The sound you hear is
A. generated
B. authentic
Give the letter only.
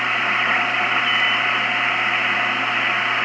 B